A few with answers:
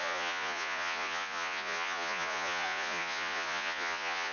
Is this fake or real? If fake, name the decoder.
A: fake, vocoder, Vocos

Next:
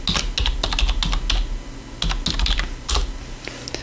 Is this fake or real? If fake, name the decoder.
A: real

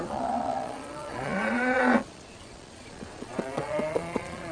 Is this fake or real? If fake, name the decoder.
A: fake, vocoder, Vocos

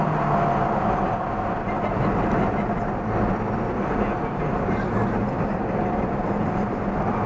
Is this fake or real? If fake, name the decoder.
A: real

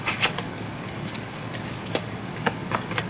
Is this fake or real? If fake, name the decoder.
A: fake, codec, DAC